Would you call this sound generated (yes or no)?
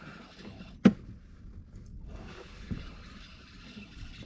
no